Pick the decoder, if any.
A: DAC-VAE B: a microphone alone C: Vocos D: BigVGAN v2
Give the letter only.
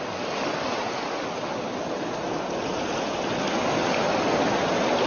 B